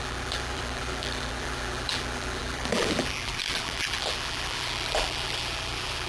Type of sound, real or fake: fake